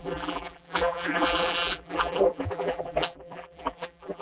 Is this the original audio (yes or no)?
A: no